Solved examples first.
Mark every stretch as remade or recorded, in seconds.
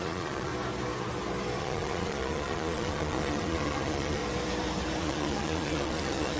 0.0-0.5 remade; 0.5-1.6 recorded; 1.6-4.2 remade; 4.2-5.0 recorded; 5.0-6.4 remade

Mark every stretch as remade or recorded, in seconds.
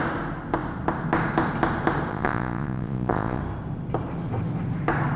0.0-2.1 recorded; 2.1-3.4 remade; 3.4-5.2 recorded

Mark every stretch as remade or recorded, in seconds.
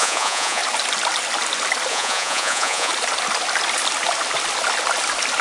0.0-0.6 remade; 0.6-1.9 recorded; 1.9-2.9 remade; 2.9-5.4 recorded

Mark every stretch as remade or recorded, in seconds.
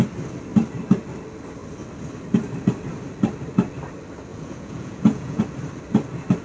0.0-4.3 recorded; 4.3-5.4 remade; 5.4-6.4 recorded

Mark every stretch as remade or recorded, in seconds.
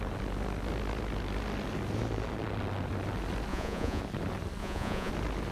0.0-3.5 recorded; 3.5-4.0 remade; 4.0-4.6 recorded; 4.6-5.1 remade; 5.1-5.5 recorded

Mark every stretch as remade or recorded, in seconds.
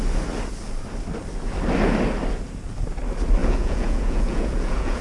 0.0-3.4 recorded; 3.4-5.0 remade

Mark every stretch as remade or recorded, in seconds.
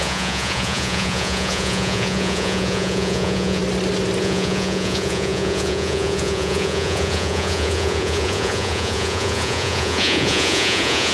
0.0-3.6 remade; 3.6-4.2 recorded; 4.2-11.1 remade